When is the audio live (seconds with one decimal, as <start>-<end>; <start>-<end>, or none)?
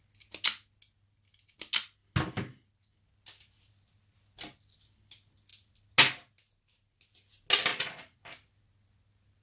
0.0-7.7; 8.2-9.4